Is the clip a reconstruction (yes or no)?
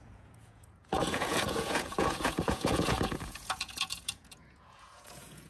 yes